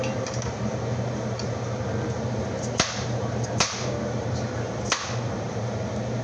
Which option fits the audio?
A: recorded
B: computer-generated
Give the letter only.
B